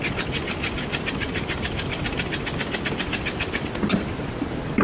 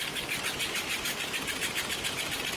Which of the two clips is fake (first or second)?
first